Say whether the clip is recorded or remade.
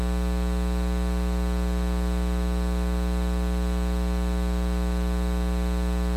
recorded